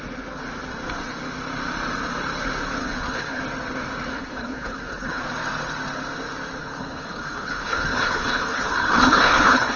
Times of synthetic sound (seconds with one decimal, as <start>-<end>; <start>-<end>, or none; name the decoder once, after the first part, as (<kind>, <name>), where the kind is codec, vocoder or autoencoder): 2.8-3.4 (codec, HILCodec); 4.1-5.2; 6.6-9.8